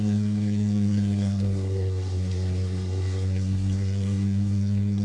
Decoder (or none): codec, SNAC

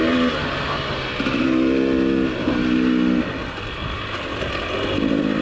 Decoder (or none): none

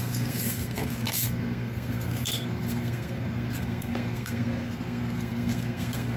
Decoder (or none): codec, SNAC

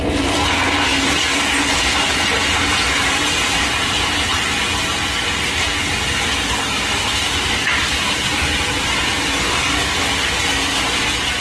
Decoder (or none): none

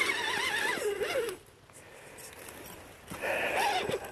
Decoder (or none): none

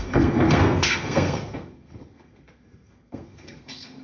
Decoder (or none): codec, SNAC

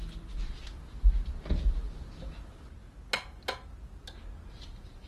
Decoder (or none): none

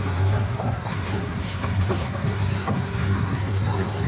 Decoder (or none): codec, SNAC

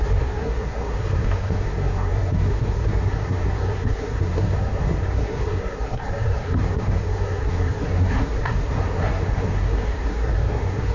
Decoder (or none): codec, SNAC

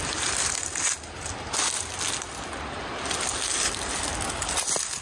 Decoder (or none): none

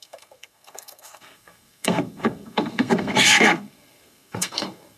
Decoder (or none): codec, SNAC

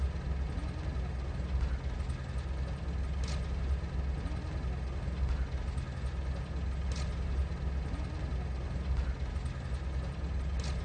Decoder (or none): none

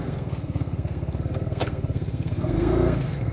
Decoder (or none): codec, SNAC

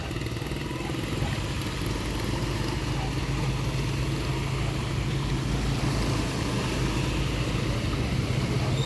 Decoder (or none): none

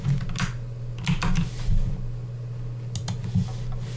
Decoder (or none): none